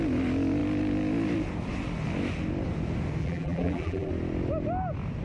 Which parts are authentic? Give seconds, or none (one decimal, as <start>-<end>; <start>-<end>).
0.0-3.2; 4.1-5.2